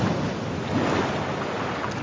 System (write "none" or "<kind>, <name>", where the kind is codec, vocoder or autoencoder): none